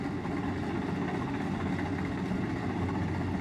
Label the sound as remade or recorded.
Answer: recorded